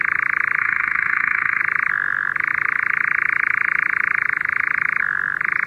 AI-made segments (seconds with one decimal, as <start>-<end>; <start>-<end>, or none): 0.6-1.6